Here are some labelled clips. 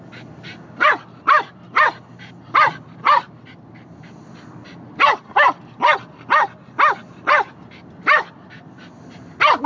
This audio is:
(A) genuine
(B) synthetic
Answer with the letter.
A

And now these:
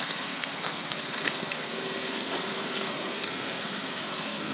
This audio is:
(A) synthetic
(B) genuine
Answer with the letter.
A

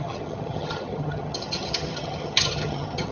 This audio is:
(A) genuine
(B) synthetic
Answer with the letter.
B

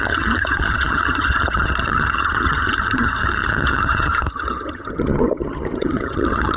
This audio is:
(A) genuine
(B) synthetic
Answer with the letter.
B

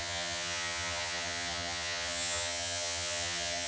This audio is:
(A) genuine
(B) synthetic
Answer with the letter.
B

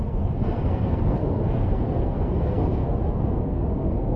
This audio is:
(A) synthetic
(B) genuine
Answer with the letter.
A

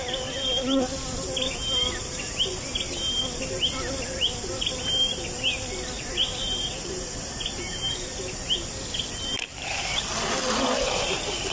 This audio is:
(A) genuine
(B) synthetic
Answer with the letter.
A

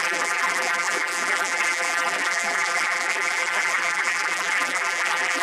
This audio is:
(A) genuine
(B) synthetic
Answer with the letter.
B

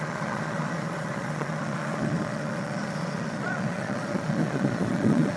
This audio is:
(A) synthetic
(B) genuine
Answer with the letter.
A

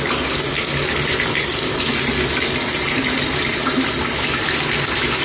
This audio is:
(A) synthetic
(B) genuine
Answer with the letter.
B